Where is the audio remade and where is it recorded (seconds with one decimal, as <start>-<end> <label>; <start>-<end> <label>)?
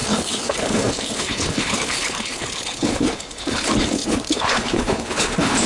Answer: 0.0-5.7 remade